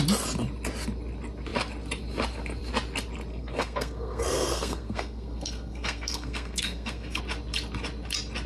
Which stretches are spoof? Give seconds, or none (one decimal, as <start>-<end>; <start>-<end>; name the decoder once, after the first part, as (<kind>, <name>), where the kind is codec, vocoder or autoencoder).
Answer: 3.3-7.2 (codec, SNAC)